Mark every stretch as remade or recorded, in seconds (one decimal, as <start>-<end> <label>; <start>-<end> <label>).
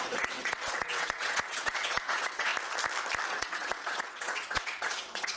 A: 0.0-2.5 remade; 2.5-3.3 recorded; 3.3-5.4 remade